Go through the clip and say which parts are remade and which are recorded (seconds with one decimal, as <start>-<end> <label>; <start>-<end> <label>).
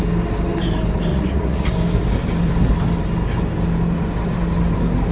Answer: 0.0-1.1 recorded; 1.1-1.7 remade; 1.7-5.1 recorded